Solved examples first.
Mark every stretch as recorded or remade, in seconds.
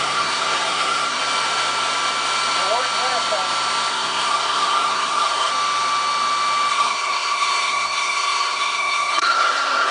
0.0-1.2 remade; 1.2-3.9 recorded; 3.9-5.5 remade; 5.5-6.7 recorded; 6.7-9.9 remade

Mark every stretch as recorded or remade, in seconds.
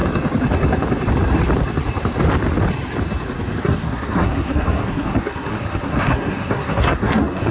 0.0-3.6 recorded; 3.6-7.5 remade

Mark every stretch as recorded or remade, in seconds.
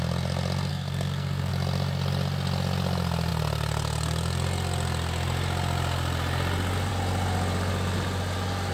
0.0-0.7 recorded; 0.7-1.5 remade; 1.5-8.7 recorded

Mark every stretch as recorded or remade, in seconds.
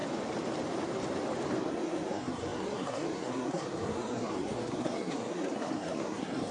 0.0-1.6 recorded; 1.6-6.5 remade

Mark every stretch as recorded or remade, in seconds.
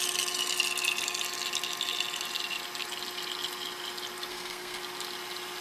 0.0-4.3 recorded; 4.3-4.8 remade; 4.8-5.6 recorded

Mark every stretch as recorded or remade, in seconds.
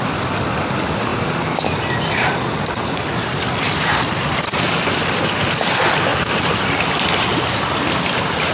0.0-8.5 recorded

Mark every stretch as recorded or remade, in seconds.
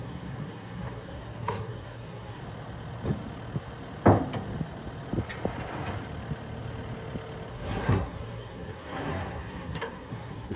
0.0-2.4 remade; 2.4-7.5 recorded; 7.5-10.6 remade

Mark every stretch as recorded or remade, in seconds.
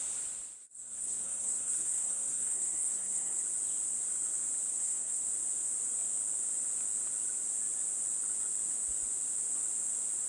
0.0-0.6 recorded; 0.6-3.4 remade; 3.4-4.7 recorded; 4.7-5.2 remade; 5.2-10.3 recorded